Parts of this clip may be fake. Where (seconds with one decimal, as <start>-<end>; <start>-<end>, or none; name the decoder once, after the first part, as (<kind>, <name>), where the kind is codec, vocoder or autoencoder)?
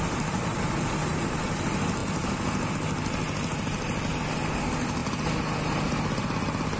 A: none